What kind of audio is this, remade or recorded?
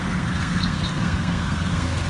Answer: remade